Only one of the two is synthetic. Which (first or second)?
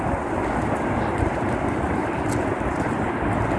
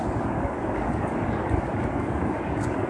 second